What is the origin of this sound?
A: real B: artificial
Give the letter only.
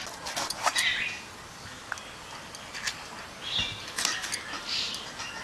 A